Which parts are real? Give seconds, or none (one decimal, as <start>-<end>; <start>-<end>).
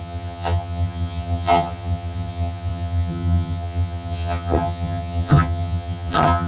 none